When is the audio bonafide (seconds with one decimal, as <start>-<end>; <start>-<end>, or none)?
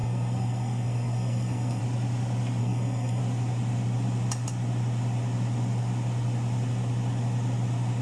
1.8-2.6; 3.2-8.0